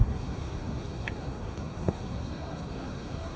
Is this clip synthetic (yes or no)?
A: yes